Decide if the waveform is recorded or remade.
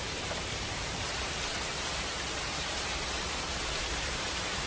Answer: remade